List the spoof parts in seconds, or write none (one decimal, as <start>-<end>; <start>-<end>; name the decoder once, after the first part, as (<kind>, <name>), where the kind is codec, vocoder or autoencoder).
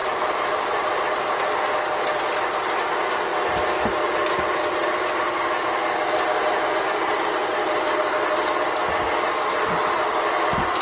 0.0-1.0 (vocoder, BigVGAN v2)